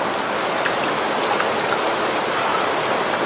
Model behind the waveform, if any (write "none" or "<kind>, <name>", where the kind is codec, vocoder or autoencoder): none